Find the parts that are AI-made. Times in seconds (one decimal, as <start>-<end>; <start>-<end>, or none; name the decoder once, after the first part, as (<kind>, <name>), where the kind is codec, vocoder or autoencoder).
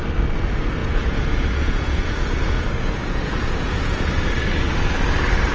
0.8-4.1 (vocoder, Vocos)